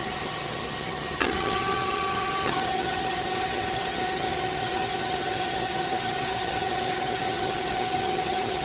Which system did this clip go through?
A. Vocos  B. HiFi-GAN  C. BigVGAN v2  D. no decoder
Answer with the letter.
B